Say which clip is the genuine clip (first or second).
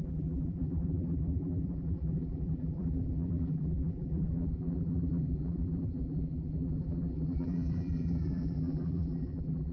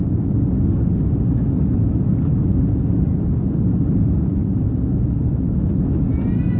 second